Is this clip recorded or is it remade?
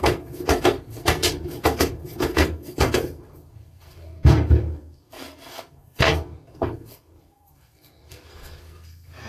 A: remade